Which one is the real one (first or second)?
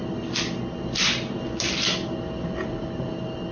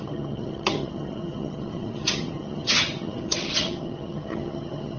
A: first